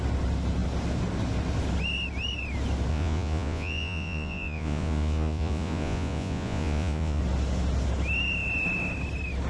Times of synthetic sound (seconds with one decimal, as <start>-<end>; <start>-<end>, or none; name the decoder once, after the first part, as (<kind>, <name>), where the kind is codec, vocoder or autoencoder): 2.9-7.2 (vocoder, Vocos)